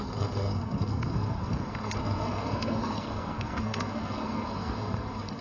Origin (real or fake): fake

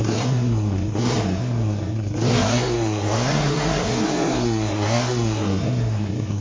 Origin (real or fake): fake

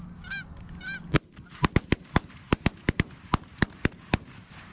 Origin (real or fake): real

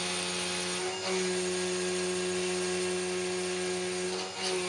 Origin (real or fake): real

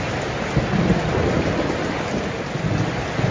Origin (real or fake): real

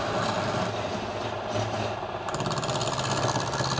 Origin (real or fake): real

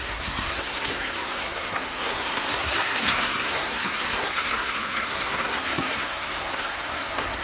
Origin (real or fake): fake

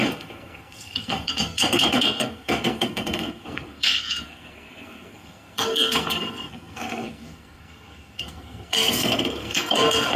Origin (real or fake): fake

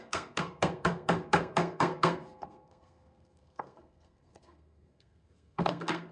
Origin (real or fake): fake